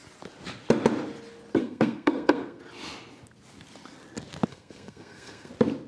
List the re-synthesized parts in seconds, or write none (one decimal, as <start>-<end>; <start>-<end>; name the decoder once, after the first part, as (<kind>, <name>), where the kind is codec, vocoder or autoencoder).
1.6-2.6 (codec, SNAC); 4.5-5.5